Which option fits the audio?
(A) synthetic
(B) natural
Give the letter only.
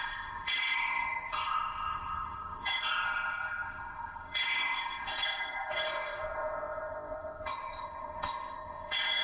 A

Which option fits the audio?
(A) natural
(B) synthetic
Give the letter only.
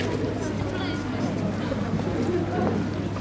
A